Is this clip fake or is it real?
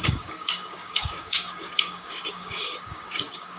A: fake